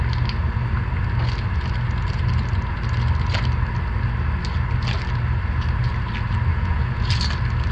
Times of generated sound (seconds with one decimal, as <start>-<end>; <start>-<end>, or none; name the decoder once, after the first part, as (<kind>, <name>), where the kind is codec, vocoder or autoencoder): 6.5-7.1 (vocoder, Vocos)